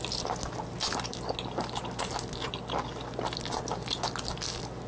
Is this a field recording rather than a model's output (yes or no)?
yes